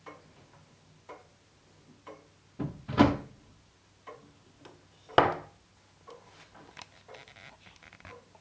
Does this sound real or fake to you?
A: real